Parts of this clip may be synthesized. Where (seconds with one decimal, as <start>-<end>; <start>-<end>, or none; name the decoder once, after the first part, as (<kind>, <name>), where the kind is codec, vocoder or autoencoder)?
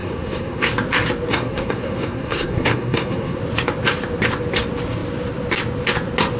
0.0-0.7 (codec, SNAC); 1.3-3.4